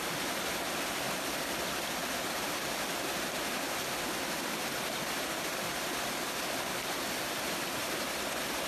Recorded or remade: recorded